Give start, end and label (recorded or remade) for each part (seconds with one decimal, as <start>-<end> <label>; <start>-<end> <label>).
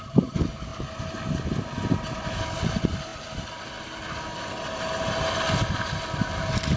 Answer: 0.0-6.8 recorded